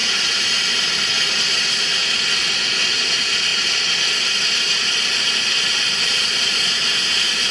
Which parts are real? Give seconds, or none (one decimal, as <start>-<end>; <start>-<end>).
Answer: 2.5-3.5; 6.6-7.5